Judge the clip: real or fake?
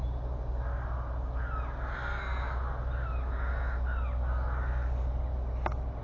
real